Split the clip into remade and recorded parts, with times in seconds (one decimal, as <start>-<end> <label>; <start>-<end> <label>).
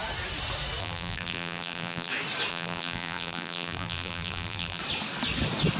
0.0-0.8 recorded; 0.8-2.1 remade; 2.1-2.5 recorded; 2.5-4.8 remade; 4.8-5.8 recorded